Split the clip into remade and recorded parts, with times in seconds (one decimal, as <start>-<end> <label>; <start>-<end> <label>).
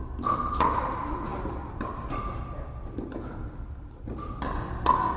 0.0-5.2 recorded